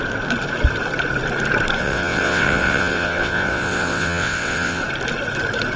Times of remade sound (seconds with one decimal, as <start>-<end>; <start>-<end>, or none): 1.8-4.8